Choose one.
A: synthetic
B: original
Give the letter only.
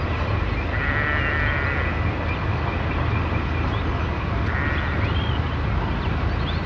B